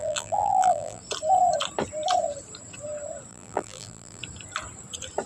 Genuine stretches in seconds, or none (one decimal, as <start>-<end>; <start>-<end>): 1.0-3.3; 4.2-5.3